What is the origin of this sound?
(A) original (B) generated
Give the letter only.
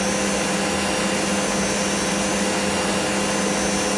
A